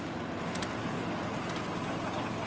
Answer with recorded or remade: recorded